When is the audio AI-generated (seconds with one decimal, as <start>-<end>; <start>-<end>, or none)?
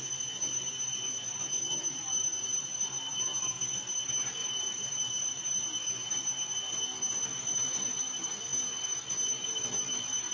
4.4-6.2; 7.3-8.4